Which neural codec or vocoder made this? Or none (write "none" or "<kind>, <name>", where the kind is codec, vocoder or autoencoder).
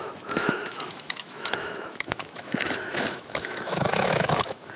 autoencoder, DAC-VAE